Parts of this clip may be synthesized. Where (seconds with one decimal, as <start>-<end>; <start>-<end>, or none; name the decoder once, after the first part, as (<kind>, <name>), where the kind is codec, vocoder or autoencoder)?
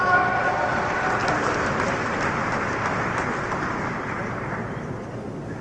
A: none